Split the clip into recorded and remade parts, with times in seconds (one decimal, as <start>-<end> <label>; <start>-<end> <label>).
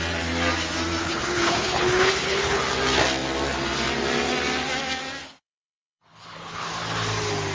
0.0-1.0 recorded; 1.0-2.6 remade; 2.6-5.2 recorded; 5.2-6.7 remade; 6.7-7.5 recorded